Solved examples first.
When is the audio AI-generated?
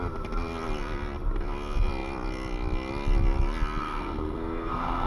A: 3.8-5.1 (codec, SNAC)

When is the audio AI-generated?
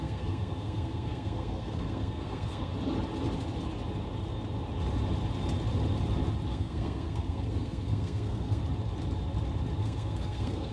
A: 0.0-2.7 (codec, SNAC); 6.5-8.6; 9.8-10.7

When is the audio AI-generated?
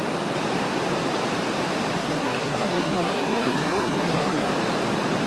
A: 2.0-4.5 (codec, SNAC)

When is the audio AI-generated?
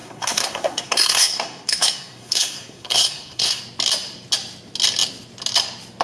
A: 0.0-3.6 (codec, SNAC)